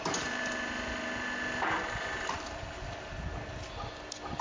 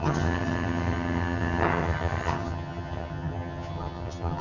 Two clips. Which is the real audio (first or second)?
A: first